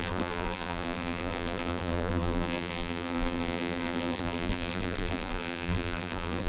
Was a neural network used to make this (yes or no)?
yes